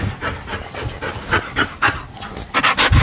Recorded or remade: recorded